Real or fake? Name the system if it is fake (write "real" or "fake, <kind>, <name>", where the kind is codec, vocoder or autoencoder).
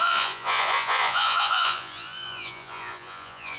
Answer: fake, vocoder, Vocos